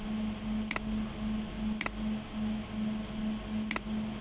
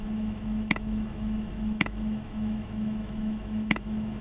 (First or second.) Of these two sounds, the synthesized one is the second